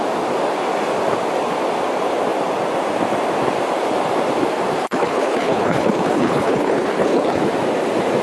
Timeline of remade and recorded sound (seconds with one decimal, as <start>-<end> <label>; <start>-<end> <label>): 0.0-4.8 recorded; 4.8-7.4 remade; 7.4-8.2 recorded